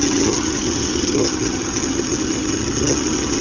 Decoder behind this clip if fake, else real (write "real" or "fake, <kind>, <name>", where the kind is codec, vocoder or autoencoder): fake, vocoder, HiFi-GAN